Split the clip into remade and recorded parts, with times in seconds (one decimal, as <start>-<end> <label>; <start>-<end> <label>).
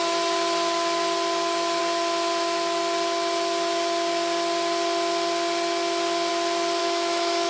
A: 0.0-6.8 recorded; 6.8-7.5 remade